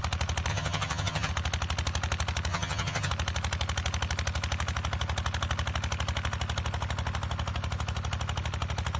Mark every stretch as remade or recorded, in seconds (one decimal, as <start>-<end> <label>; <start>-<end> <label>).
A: 0.0-0.5 recorded; 0.5-1.3 remade; 1.3-2.5 recorded; 2.5-3.1 remade; 3.1-9.0 recorded